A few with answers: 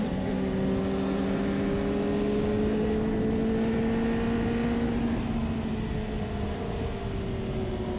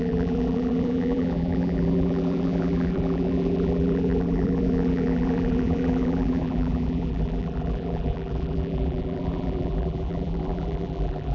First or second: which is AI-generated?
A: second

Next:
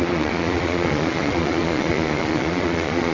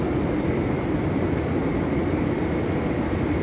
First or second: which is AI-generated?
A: first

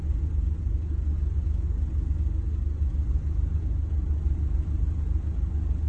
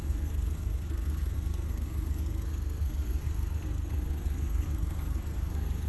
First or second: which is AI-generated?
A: second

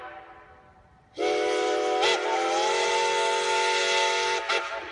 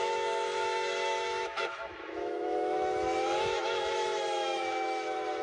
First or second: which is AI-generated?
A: second